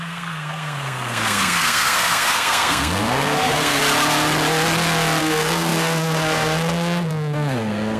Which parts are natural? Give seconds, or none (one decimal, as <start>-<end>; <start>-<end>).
3.8-5.2